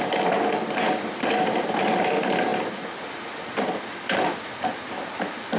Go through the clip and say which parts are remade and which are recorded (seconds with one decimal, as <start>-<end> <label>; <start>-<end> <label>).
0.0-5.6 recorded